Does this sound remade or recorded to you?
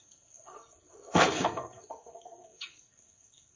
remade